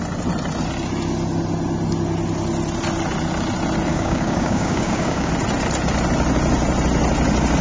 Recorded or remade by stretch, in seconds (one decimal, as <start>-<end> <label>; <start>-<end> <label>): 0.0-3.9 recorded; 3.9-5.3 remade; 5.3-7.6 recorded